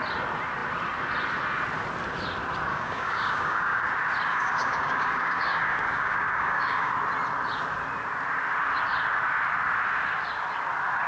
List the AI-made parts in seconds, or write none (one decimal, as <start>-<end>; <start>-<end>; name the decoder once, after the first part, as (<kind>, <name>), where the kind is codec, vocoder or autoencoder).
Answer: 2.7-3.8 (codec, DAC); 4.3-6.9